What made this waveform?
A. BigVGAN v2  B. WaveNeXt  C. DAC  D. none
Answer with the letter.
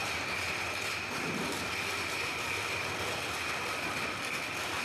D